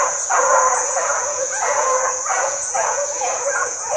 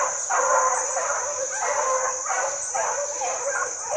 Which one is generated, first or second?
first